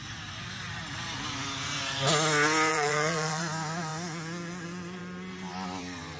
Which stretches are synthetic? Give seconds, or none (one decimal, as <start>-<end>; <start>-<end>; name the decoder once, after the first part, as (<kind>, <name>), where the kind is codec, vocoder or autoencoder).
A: 2.7-3.4 (vocoder, Vocos)